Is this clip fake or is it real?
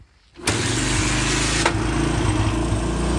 real